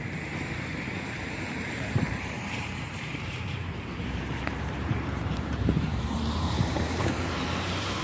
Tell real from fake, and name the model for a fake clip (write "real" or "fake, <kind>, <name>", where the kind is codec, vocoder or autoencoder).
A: fake, vocoder, BigVGAN v2